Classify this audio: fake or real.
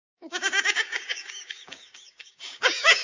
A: fake